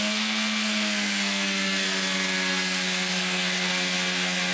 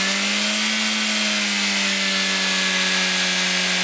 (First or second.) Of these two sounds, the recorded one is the second